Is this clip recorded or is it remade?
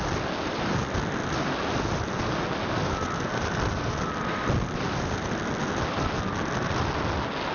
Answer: recorded